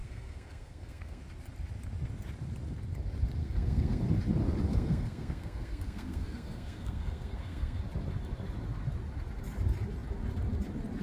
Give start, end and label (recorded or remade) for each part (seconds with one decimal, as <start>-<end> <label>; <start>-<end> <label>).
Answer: 0.0-1.2 remade; 1.2-3.4 recorded; 3.4-4.0 remade; 4.0-4.7 recorded; 4.7-7.8 remade; 7.8-11.0 recorded